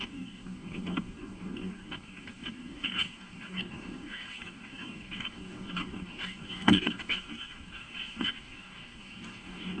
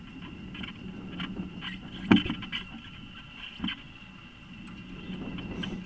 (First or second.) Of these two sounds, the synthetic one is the first